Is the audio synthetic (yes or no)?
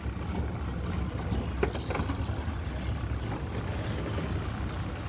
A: no